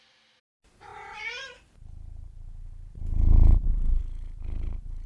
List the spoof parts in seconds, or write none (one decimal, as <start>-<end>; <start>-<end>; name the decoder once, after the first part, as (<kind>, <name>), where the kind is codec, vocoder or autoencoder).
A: 0.9-4.0 (vocoder, BigVGAN v2)